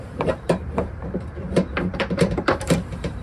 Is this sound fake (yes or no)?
yes